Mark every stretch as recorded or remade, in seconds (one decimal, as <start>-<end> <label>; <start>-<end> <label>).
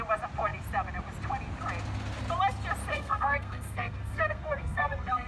0.0-2.9 recorded; 2.9-5.3 remade